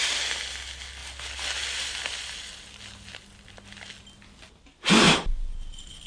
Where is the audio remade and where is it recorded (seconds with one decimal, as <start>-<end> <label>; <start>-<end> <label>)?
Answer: 0.0-6.1 recorded